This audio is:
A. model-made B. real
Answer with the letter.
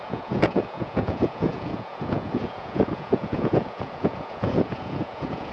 A